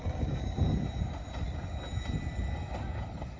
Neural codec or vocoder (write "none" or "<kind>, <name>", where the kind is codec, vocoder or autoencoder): none